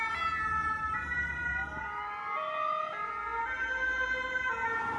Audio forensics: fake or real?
real